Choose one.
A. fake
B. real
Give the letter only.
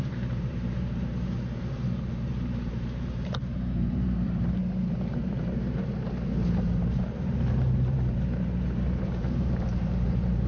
A